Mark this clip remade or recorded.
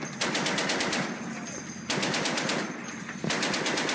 recorded